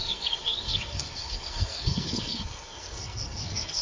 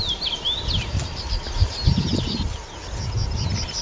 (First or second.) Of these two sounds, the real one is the second